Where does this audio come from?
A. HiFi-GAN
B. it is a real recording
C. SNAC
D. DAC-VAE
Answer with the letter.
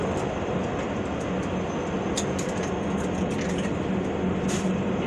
B